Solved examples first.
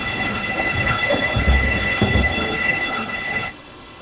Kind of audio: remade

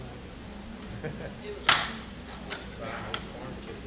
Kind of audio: recorded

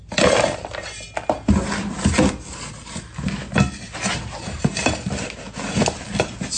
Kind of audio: recorded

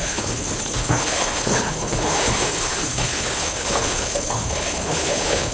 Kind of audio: remade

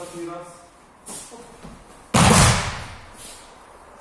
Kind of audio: recorded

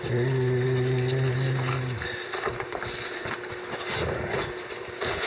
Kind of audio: recorded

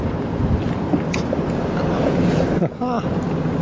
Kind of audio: recorded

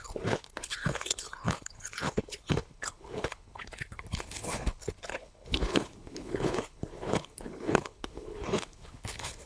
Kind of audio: remade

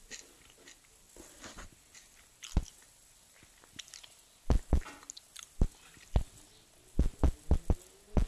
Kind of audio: recorded